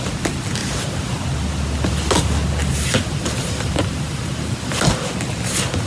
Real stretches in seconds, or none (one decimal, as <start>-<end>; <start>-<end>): 0.0-0.6; 1.2-2.6; 4.7-5.9